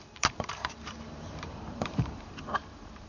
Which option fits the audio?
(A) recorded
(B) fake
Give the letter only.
B